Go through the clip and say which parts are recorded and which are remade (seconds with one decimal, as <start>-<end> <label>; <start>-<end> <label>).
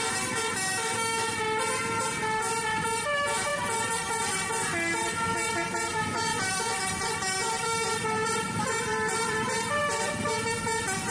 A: 0.0-6.3 recorded; 6.3-10.1 remade; 10.1-11.1 recorded